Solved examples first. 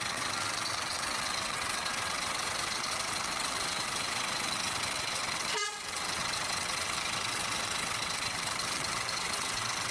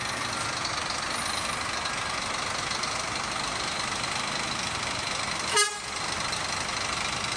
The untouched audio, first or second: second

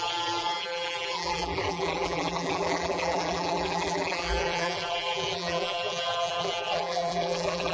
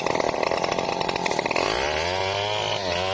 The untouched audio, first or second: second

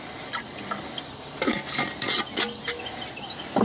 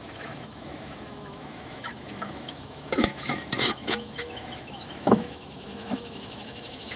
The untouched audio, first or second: first